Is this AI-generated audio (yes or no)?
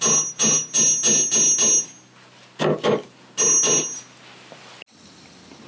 no